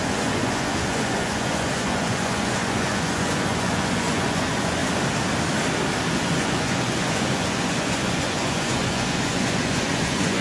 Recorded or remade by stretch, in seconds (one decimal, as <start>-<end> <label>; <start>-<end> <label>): 0.0-4.8 remade; 4.8-6.1 recorded; 6.1-10.4 remade